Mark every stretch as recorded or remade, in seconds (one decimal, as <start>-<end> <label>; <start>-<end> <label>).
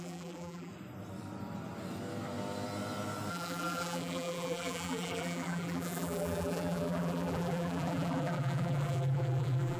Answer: 0.0-0.7 remade; 0.7-3.3 recorded; 3.3-9.8 remade